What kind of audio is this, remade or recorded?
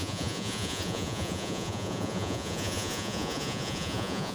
remade